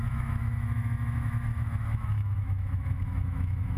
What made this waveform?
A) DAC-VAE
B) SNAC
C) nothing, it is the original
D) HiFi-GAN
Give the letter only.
A